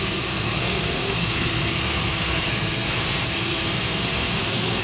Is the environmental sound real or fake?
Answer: fake